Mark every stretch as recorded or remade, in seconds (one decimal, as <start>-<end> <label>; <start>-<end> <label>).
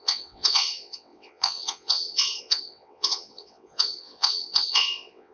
0.0-5.3 remade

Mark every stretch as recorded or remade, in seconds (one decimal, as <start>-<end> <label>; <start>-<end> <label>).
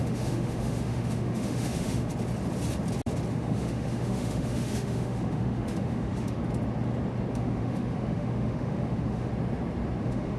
0.0-2.1 remade; 2.1-3.3 recorded; 3.3-6.4 remade; 6.4-7.3 recorded; 7.3-9.3 remade; 9.3-10.0 recorded; 10.0-10.4 remade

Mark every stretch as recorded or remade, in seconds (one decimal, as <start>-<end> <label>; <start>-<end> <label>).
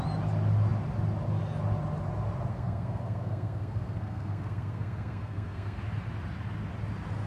0.0-2.5 recorded; 2.5-5.8 remade; 5.8-7.3 recorded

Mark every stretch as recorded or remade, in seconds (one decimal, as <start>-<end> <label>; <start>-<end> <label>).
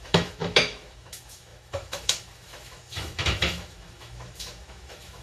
0.0-5.2 remade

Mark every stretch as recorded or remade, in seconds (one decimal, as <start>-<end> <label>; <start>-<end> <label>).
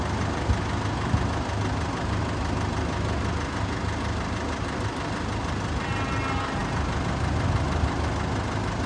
0.0-8.9 recorded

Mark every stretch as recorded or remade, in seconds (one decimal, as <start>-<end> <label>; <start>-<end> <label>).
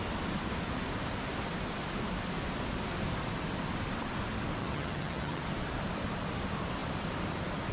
0.0-4.6 recorded; 4.6-5.4 remade; 5.4-7.7 recorded